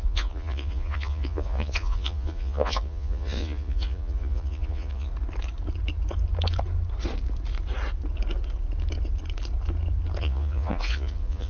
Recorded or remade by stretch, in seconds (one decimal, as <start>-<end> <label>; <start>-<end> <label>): 0.0-5.1 remade; 5.1-10.2 recorded; 10.2-11.5 remade